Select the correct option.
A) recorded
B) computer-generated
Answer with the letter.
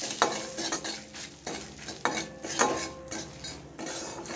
A